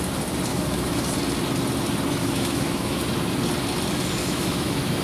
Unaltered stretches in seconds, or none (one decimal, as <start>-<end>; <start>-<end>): 0.0-0.5; 1.0-2.2; 3.0-4.2